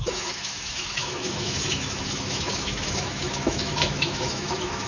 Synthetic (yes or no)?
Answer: yes